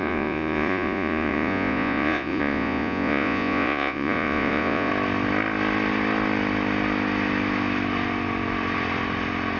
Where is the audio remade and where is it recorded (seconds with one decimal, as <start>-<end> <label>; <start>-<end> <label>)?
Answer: 0.0-4.9 remade; 4.9-9.6 recorded